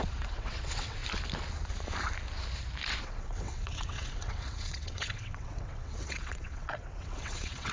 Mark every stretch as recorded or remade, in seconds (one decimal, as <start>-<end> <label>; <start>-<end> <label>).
0.0-1.0 remade; 1.0-3.0 recorded; 3.0-7.7 remade